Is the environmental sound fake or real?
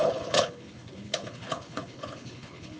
fake